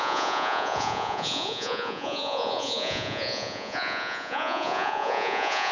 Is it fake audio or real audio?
fake